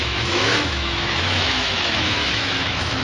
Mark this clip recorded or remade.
remade